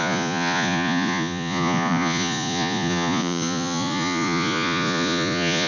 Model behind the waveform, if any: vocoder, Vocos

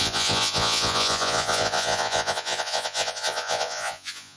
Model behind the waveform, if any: vocoder, Vocos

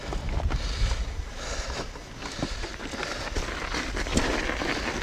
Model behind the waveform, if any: none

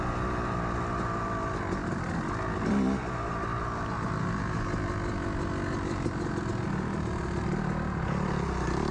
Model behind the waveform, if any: none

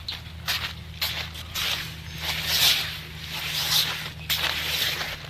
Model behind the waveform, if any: none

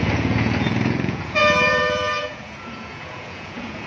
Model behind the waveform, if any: vocoder, Vocos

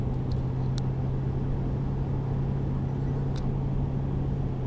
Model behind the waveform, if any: none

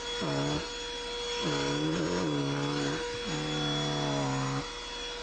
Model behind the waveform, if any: none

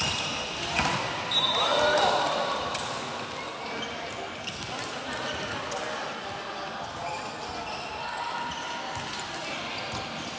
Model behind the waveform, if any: none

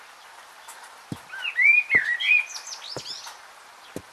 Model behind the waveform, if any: none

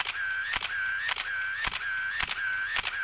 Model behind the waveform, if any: none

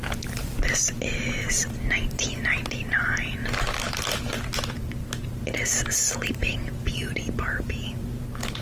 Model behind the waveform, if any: none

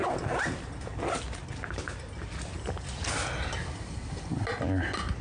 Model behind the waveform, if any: none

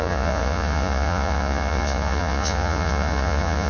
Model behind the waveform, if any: vocoder, Vocos